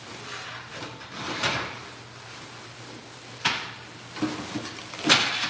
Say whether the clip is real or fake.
real